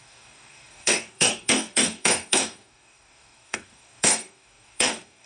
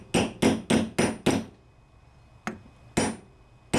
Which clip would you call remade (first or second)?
first